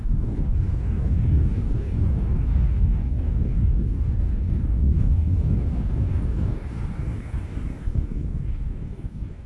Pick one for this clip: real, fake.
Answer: fake